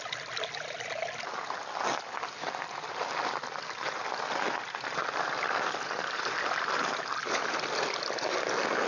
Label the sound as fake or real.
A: real